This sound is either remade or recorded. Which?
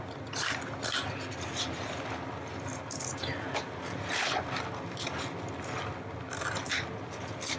recorded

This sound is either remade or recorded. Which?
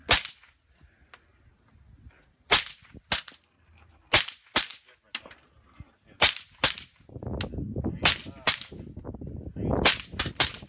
recorded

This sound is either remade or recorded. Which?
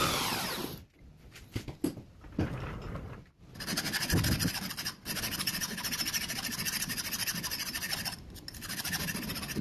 recorded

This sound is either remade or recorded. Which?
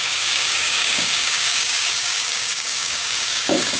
remade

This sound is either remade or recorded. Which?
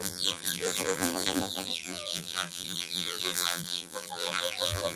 remade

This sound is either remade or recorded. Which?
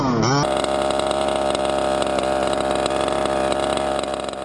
recorded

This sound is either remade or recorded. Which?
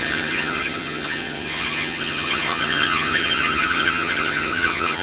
remade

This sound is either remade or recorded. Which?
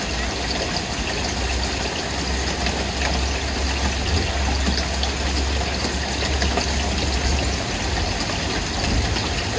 recorded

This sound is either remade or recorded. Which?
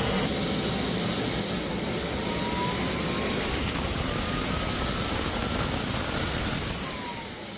recorded